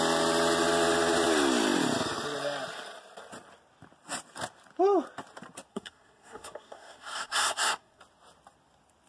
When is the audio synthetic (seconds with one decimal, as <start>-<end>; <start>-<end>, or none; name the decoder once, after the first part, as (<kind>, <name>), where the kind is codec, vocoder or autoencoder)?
5.7-8.0 (codec, SNAC)